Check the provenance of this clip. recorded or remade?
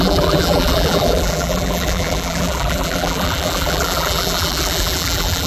remade